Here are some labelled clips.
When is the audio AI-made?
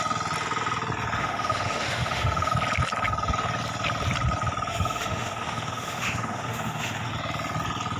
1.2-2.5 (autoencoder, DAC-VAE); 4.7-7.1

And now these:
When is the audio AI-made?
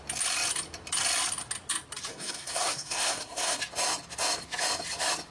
2.1-3.6 (codec, SNAC)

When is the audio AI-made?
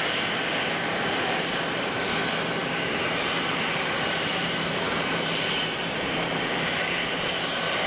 2.6-7.3 (vocoder, BigVGAN v2)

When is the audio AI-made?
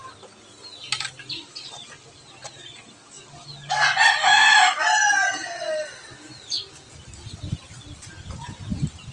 4.2-4.8 (autoencoder, DAC-VAE)